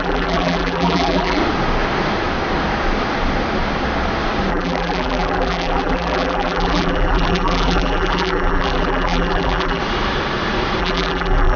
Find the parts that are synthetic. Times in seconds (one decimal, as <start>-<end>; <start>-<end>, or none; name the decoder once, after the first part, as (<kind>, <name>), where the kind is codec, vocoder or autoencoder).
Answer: 0.0-1.4 (vocoder, BigVGAN v2); 4.5-9.8; 10.8-11.6